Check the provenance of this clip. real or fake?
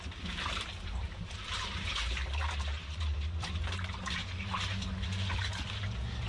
fake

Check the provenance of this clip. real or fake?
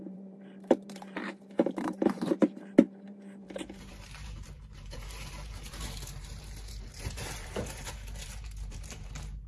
fake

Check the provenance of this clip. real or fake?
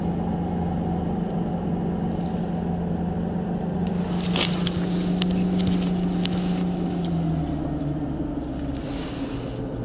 real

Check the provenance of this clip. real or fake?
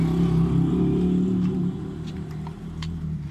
real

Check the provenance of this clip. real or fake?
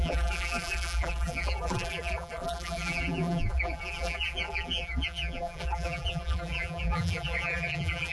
fake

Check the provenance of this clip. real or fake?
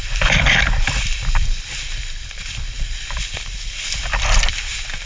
fake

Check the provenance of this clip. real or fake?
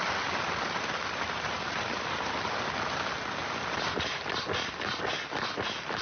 real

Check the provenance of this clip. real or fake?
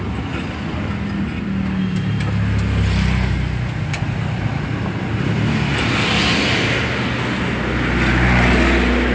real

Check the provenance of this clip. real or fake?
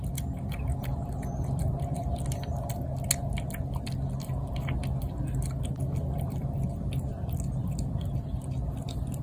real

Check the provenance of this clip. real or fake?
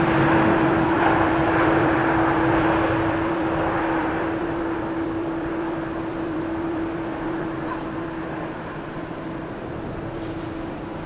fake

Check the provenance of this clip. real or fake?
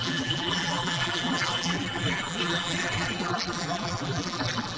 fake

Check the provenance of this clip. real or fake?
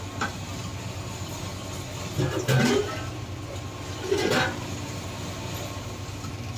real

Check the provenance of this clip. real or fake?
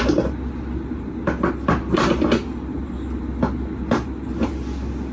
real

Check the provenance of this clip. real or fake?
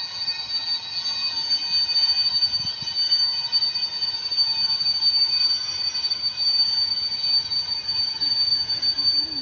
real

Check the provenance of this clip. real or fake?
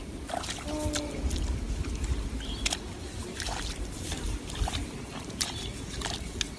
real